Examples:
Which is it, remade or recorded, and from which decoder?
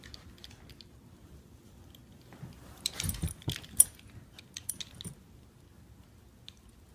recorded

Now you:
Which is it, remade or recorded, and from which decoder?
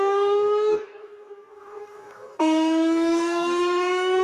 remade, codec, DAC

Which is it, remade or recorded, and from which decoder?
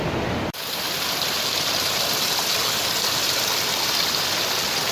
recorded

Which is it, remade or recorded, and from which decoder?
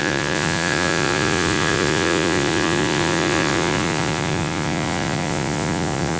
remade, vocoder, Vocos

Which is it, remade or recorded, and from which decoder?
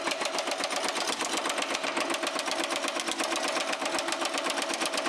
recorded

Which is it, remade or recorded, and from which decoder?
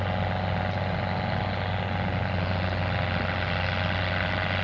recorded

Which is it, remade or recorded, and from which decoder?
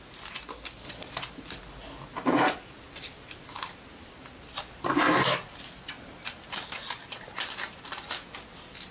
recorded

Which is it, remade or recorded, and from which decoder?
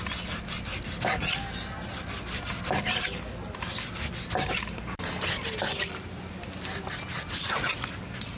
recorded